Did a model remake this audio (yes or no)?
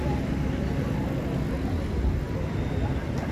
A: no